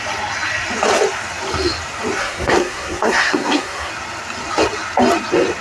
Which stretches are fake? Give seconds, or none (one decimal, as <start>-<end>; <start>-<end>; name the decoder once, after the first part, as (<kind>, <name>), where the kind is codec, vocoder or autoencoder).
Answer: 2.2-3.9 (codec, SNAC)